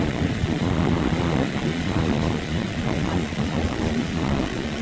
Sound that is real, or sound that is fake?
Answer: fake